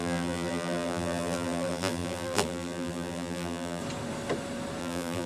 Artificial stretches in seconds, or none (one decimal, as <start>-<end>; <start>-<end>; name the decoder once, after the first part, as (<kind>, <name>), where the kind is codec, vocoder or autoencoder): 0.0-3.8 (vocoder, BigVGAN v2); 4.8-5.3